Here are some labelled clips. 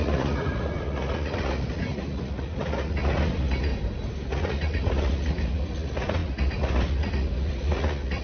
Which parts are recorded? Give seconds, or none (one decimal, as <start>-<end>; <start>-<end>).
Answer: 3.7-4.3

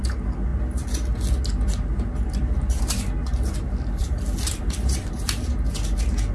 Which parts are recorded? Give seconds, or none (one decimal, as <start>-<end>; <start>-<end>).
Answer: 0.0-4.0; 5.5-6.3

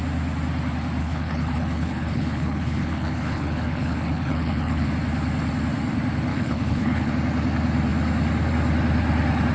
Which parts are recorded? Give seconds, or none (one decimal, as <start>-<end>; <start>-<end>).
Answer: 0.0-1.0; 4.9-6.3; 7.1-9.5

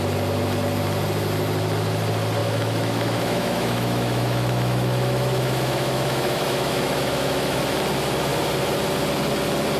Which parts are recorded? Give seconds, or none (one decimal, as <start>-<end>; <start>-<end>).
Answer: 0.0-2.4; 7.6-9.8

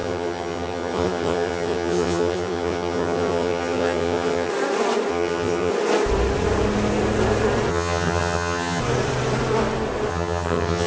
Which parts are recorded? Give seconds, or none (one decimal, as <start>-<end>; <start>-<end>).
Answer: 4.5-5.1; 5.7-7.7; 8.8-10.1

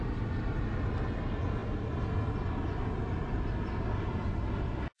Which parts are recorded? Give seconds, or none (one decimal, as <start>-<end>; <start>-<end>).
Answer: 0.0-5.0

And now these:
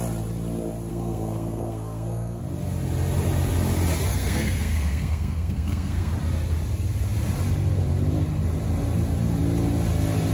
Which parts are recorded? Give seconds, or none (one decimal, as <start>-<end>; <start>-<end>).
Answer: 0.0-0.9; 2.4-4.1; 6.1-10.3